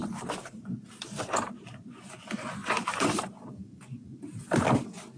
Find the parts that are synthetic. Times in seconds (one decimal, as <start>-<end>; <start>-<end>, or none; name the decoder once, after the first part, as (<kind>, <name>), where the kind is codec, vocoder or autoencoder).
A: 0.0-1.8 (vocoder, BigVGAN v2); 2.6-3.2